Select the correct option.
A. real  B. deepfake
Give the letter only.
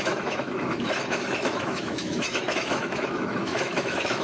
B